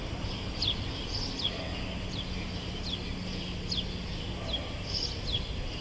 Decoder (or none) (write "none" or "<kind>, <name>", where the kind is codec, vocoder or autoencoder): none